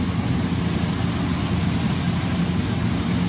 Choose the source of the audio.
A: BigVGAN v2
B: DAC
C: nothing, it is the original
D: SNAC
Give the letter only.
C